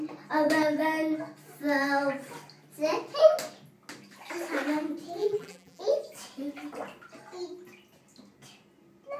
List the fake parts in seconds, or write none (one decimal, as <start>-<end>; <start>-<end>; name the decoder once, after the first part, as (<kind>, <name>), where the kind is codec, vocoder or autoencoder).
5.2-5.8 (vocoder, BigVGAN v2)